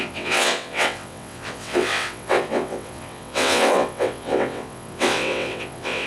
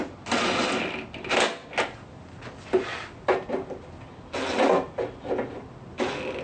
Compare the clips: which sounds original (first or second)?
second